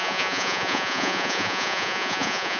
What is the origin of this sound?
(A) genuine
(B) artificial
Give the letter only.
B